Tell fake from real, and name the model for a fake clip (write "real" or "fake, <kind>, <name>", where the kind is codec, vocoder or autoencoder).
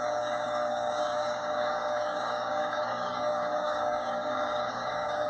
fake, codec, DAC